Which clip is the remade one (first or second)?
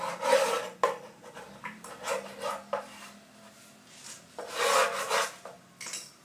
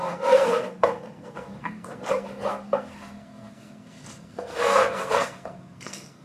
second